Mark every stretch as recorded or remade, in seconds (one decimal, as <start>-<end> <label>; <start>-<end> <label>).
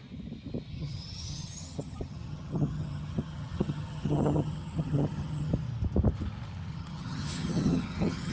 0.0-0.7 recorded; 0.7-5.5 remade; 5.5-6.7 recorded; 6.7-8.3 remade